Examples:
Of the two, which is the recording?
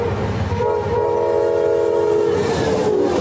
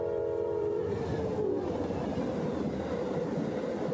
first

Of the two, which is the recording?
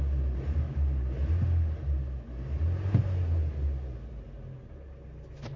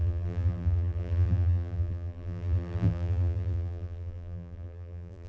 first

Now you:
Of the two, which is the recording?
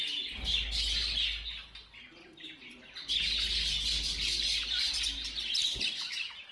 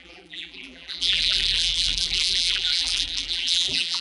first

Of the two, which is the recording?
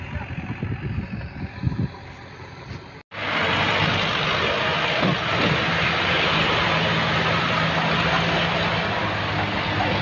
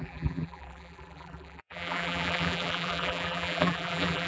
first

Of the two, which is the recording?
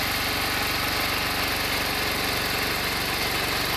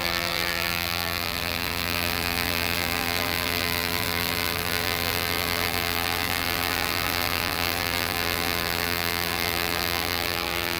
first